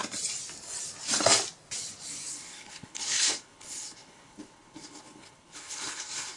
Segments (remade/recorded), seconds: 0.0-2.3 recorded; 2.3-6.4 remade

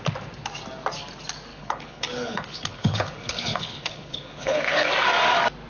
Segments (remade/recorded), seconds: 0.0-1.5 recorded; 1.5-4.9 remade; 4.9-5.7 recorded

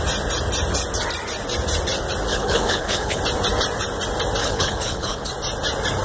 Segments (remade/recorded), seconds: 0.0-2.3 recorded; 2.3-3.2 remade; 3.2-4.4 recorded; 4.4-5.3 remade; 5.3-6.0 recorded

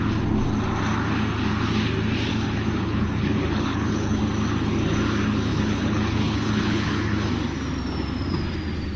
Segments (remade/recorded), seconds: 0.0-2.3 recorded; 2.3-4.2 remade; 4.2-5.5 recorded; 5.5-7.3 remade; 7.3-9.0 recorded

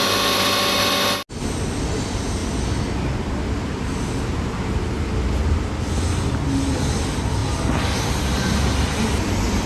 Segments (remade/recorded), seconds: 0.0-9.7 recorded

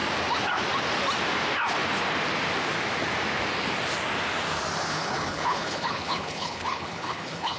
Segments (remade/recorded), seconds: 0.0-4.9 recorded; 4.9-7.6 remade

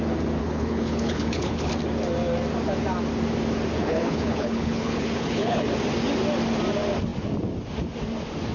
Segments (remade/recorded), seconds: 0.0-0.4 recorded; 0.4-1.7 remade; 1.7-3.8 recorded; 3.8-5.7 remade; 5.7-8.5 recorded